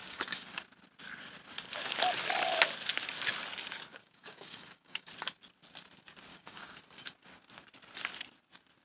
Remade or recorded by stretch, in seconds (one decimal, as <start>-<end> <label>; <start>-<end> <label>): 0.0-0.6 remade; 0.6-3.9 recorded; 3.9-5.1 remade; 5.1-6.3 recorded; 6.3-6.8 remade; 6.8-8.8 recorded